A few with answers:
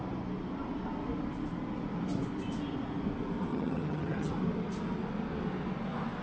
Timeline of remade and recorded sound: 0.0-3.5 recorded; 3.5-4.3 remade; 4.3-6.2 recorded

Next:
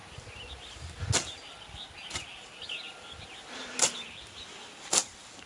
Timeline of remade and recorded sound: 0.0-5.5 recorded

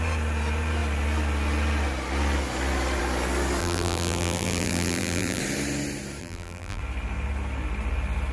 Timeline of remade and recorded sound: 0.0-3.6 recorded; 3.6-5.4 remade; 5.4-6.2 recorded; 6.2-6.8 remade; 6.8-8.3 recorded

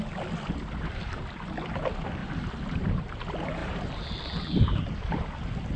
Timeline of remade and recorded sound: 0.0-2.2 recorded; 2.2-3.0 remade; 3.0-3.6 recorded; 3.6-4.8 remade; 4.8-5.8 recorded

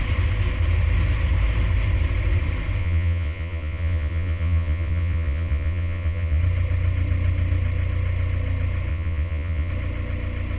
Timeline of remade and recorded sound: 0.0-2.8 recorded; 2.8-6.4 remade; 6.4-8.9 recorded; 8.9-9.7 remade; 9.7-10.6 recorded

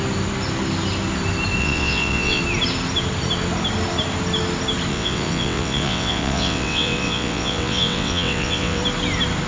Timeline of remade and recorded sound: 0.0-1.6 recorded; 1.6-2.4 remade; 2.4-4.9 recorded; 4.9-8.8 remade; 8.8-9.5 recorded